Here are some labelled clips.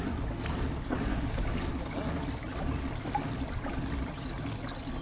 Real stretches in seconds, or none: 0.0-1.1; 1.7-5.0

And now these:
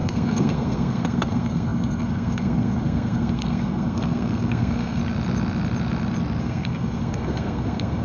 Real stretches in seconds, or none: 5.0-6.4

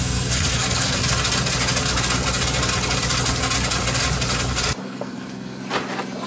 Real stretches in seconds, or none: 1.0-4.8; 5.6-6.3

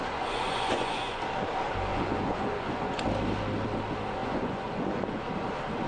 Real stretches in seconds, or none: 1.2-1.9; 3.0-4.2; 5.2-5.9

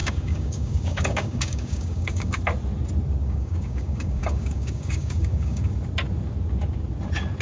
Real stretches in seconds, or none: 2.4-3.2; 5.7-7.4